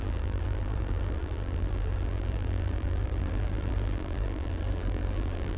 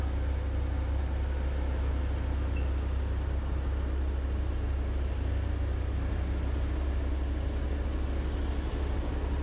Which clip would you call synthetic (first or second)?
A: first